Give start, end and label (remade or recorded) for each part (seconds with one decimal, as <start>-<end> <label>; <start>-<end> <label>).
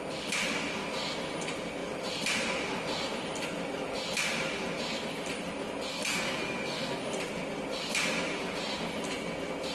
0.0-5.9 recorded; 5.9-7.0 remade; 7.0-9.7 recorded